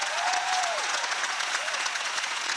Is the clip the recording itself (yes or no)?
no